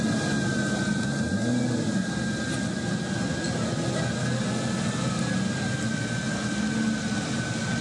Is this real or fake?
real